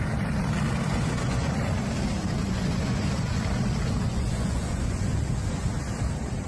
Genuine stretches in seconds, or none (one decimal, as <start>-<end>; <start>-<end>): 0.0-0.9; 1.6-2.4; 3.4-4.1; 5.2-6.5